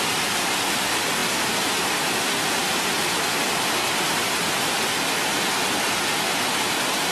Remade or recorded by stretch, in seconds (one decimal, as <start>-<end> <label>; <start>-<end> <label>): 0.0-7.1 recorded